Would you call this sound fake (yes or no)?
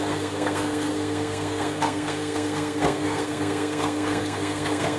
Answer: yes